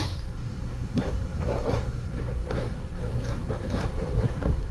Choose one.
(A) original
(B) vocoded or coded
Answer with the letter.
B